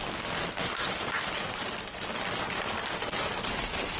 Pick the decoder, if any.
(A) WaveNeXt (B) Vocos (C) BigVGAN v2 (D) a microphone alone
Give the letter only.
D